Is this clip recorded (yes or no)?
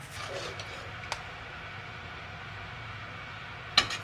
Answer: yes